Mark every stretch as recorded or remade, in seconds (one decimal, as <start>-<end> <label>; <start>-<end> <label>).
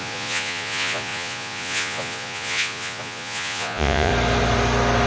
0.0-4.1 remade; 4.1-5.1 recorded